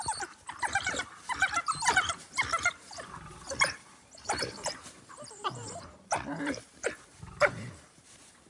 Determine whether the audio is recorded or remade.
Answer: remade